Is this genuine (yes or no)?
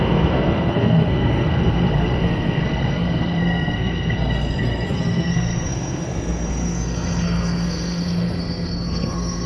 no